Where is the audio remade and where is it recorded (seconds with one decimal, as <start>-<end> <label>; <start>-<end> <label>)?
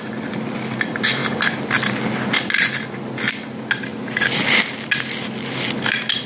0.0-6.3 recorded